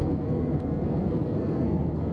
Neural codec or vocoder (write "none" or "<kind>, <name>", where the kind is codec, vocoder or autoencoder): codec, SNAC